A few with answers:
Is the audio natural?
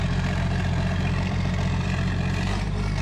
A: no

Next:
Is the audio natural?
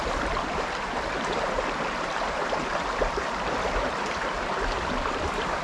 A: no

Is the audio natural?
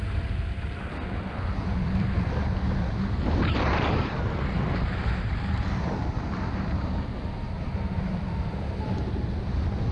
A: yes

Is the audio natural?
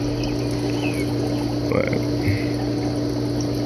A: yes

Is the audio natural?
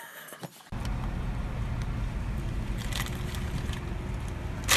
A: yes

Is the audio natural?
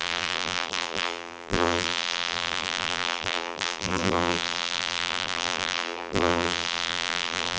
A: no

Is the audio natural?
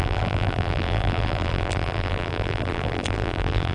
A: no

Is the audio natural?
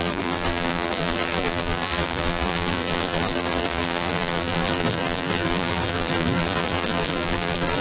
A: no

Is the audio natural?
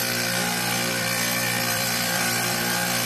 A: no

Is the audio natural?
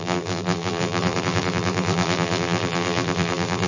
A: no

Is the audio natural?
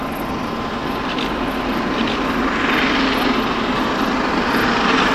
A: yes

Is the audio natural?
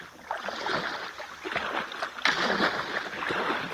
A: yes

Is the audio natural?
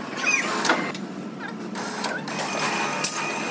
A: yes